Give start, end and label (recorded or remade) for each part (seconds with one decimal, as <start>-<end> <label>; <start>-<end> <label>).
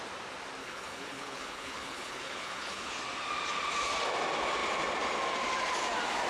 0.0-0.6 recorded; 0.6-3.0 remade; 3.0-6.3 recorded